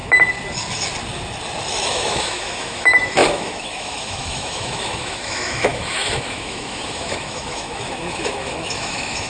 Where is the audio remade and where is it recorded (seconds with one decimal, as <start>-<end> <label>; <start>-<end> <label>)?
0.0-1.9 recorded; 1.9-9.3 remade